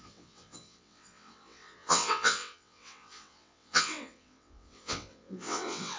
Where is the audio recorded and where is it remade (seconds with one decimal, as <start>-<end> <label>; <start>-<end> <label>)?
0.0-6.0 remade